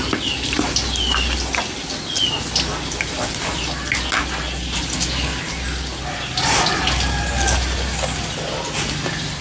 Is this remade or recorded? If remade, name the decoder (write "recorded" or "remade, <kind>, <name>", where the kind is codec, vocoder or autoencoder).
recorded